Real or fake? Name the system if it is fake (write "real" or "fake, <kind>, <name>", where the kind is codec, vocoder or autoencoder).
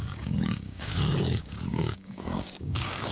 fake, codec, DAC